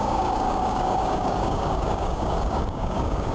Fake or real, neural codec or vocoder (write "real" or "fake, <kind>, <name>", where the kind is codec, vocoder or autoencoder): fake, codec, DAC